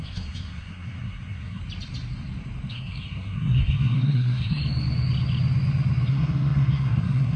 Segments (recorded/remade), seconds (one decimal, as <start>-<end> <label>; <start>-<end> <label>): 0.0-1.6 remade; 1.6-2.7 recorded; 2.7-4.6 remade; 4.6-6.1 recorded; 6.1-7.4 remade